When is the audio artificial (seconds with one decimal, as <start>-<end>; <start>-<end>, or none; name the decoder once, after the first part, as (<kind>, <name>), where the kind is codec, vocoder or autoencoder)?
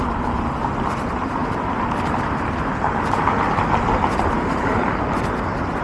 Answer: 1.4-4.9 (vocoder, BigVGAN v2)